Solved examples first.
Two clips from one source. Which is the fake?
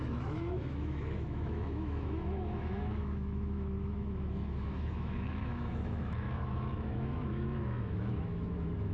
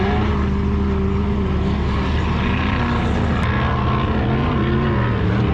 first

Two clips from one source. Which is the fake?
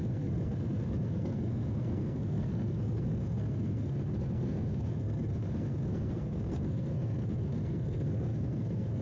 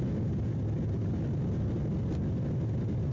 first